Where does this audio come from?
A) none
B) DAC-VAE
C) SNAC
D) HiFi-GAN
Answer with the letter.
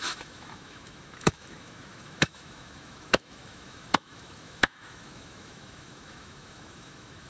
B